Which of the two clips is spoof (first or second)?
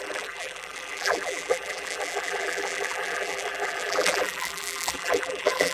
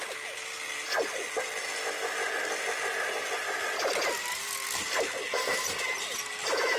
first